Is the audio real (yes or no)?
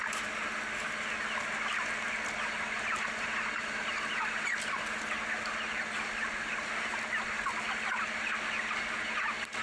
yes